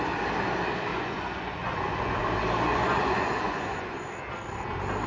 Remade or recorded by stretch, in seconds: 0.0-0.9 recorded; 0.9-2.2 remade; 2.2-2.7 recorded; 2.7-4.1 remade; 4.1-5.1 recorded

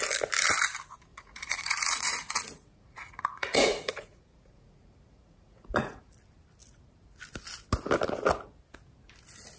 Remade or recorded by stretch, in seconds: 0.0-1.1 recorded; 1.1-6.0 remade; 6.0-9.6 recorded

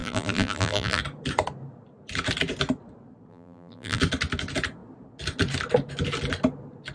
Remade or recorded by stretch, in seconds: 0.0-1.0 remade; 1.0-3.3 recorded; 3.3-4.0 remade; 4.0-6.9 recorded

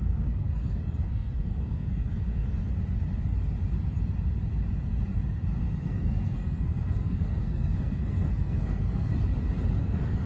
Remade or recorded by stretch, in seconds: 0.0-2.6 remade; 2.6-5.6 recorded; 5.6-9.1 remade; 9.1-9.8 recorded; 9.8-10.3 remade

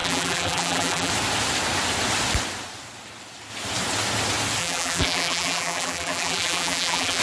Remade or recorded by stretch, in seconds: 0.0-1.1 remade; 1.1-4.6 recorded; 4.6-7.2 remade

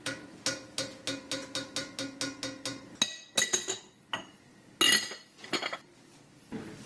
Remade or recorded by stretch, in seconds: 0.0-6.9 recorded